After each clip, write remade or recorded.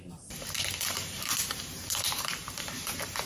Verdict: remade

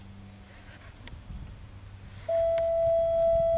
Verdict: recorded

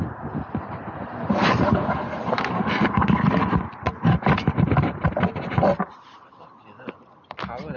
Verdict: recorded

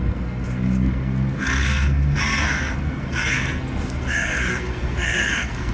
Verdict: remade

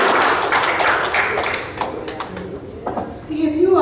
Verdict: recorded